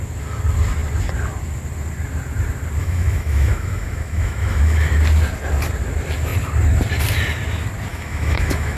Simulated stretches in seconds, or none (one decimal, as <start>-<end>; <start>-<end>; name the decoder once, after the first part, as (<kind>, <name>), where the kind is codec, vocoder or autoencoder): 2.8-4.9 (autoencoder, DAC-VAE); 7.9-8.8